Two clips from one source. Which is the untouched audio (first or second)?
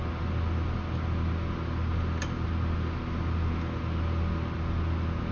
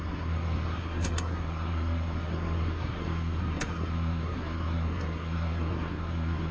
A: first